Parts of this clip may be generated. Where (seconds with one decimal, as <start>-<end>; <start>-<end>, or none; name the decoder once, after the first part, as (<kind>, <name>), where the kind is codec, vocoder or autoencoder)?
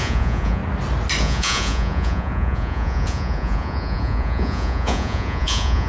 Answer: 0.0-0.6 (vocoder, Vocos); 1.2-5.9